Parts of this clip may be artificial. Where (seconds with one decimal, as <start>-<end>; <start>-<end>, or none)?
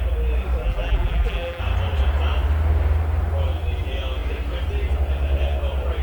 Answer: 0.6-1.6